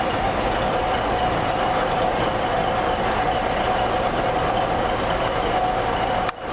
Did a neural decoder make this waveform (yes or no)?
no